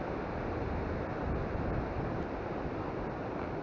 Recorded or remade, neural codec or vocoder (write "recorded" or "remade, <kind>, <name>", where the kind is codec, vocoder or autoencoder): recorded